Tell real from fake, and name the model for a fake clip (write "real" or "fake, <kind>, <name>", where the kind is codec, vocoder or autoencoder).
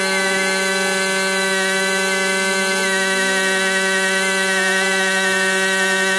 real